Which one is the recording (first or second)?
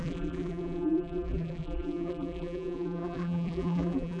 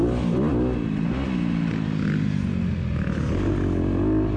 second